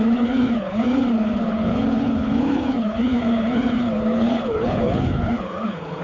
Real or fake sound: fake